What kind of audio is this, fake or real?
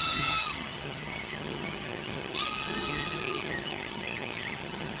fake